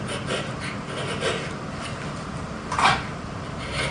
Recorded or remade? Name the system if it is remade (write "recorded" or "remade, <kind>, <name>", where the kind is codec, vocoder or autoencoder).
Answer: remade, vocoder, BigVGAN v2